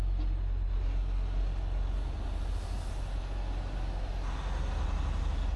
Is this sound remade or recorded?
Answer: recorded